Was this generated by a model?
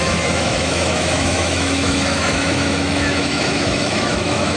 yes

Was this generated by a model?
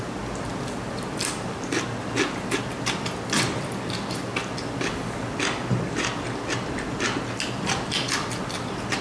no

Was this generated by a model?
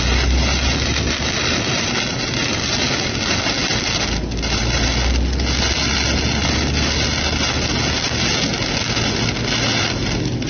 no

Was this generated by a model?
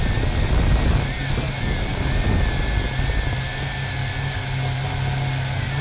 no